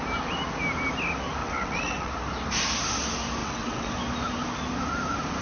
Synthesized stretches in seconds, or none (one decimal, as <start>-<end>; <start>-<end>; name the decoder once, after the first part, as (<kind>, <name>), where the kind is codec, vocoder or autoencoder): 1.4-2.1 (vocoder, WaveNeXt); 3.4-3.9